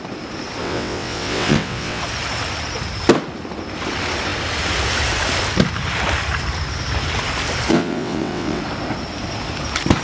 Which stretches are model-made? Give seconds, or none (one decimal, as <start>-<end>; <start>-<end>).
0.6-2.0; 7.7-8.6